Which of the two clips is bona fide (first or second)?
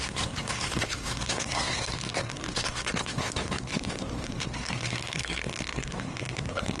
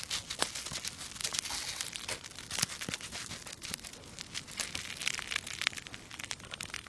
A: second